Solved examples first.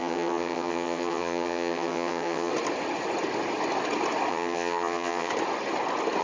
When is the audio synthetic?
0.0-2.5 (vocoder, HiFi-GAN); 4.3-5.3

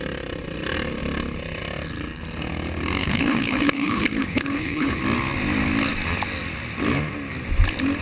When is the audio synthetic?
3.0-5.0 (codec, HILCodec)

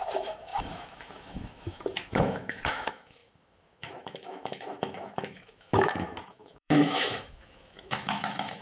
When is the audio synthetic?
0.0-8.6 (autoencoder, DAC-VAE)